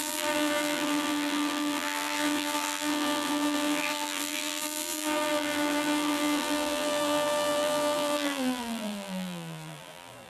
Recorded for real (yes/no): no